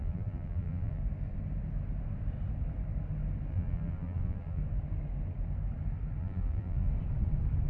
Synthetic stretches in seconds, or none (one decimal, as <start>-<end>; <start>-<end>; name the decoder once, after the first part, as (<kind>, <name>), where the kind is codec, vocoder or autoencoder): 0.0-1.0 (vocoder, BigVGAN v2); 3.5-4.6; 6.2-6.9